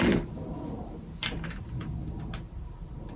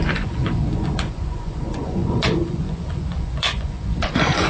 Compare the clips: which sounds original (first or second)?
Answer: first